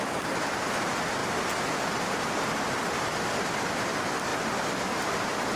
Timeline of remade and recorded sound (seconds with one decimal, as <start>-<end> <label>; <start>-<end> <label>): 0.0-5.6 recorded